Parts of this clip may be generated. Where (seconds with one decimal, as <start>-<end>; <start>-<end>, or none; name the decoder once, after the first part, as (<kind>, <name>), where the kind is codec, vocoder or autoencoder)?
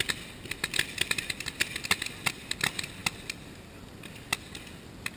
none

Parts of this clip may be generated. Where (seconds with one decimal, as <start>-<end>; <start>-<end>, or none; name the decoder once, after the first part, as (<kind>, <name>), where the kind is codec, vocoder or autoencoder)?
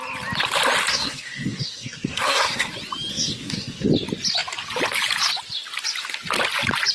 0.9-2.7 (codec, SNAC); 3.1-3.9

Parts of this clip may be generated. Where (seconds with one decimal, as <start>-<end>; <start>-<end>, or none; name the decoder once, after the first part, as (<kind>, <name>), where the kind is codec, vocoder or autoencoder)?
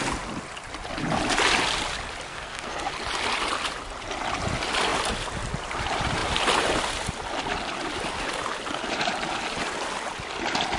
2.3-2.9 (codec, SNAC)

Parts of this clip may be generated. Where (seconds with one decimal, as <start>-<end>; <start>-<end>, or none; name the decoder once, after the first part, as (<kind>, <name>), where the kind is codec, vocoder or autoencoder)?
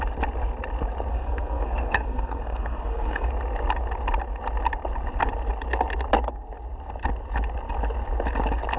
1.1-3.3 (codec, SNAC)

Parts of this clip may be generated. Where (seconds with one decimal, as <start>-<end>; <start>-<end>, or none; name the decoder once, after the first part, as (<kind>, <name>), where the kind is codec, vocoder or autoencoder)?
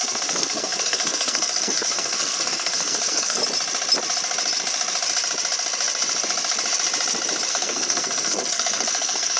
0.0-3.4 (codec, SNAC); 7.5-9.4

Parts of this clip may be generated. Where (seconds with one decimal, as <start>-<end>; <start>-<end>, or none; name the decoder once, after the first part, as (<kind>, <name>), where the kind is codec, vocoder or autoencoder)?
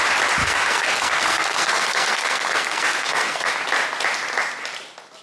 0.4-3.5 (codec, SNAC)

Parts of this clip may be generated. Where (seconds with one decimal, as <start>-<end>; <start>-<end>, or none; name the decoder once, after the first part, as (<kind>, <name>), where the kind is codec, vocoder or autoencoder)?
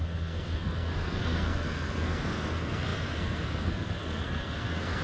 0.0-5.0 (codec, SNAC)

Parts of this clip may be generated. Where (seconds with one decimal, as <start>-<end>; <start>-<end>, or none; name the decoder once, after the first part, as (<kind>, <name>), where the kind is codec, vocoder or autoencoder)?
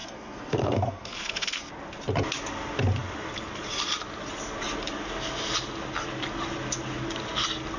0.0-1.7 (codec, SNAC)